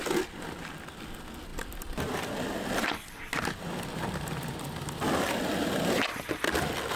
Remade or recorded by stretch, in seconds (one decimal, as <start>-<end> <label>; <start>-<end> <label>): 0.0-1.5 recorded; 1.5-5.2 remade; 5.2-7.0 recorded